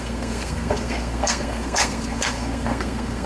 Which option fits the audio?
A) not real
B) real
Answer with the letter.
A